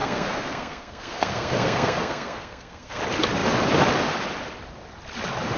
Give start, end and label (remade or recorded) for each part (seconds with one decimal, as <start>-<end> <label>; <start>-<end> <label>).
0.0-3.0 remade; 3.0-5.6 recorded